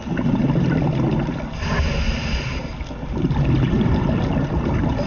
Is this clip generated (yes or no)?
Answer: no